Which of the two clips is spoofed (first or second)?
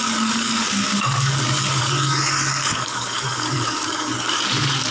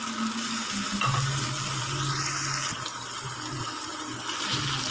first